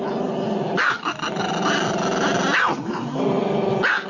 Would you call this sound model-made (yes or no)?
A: no